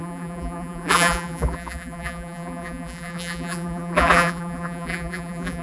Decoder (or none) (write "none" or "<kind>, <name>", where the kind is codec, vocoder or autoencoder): vocoder, BigVGAN v2